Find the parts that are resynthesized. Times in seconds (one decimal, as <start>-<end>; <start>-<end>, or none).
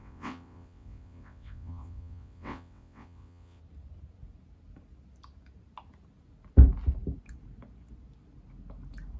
0.0-3.6